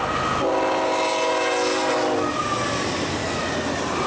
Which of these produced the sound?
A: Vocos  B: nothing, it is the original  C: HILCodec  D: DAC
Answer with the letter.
B